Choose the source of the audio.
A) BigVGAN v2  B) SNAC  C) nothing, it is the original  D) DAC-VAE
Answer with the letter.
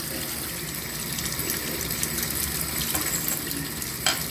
C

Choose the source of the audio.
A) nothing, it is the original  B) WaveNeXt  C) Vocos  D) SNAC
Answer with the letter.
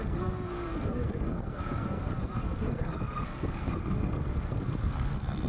D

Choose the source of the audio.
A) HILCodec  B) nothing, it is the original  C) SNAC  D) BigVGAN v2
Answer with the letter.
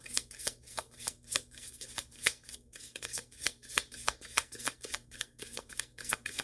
C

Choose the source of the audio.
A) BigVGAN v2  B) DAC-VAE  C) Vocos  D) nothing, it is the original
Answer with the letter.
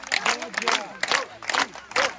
D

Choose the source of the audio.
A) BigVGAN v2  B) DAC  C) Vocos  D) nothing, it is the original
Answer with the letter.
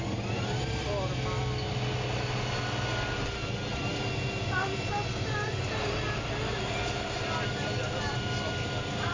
D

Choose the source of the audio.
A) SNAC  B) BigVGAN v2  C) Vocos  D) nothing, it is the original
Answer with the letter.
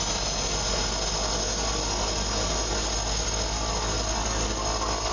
D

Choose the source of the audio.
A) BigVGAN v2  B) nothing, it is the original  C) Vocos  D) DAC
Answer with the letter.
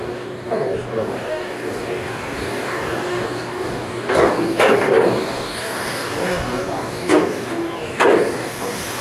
D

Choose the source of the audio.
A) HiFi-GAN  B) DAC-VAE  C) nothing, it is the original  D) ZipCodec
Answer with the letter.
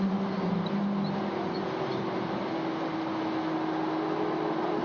C